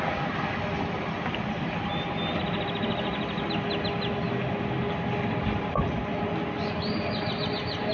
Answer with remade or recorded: recorded